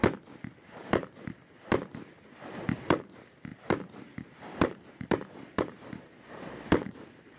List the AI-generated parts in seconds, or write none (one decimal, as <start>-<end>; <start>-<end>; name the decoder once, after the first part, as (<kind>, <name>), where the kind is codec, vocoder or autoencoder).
0.6-1.4 (vocoder, BigVGAN v2); 2.0-7.4